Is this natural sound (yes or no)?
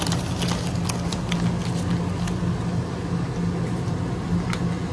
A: yes